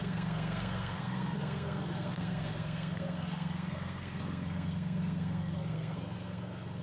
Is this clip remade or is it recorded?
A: remade